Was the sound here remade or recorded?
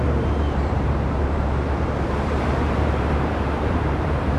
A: remade